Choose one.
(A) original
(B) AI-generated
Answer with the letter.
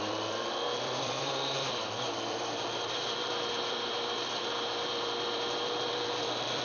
B